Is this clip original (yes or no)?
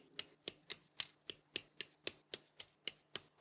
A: yes